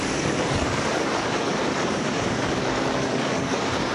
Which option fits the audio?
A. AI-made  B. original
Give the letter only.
A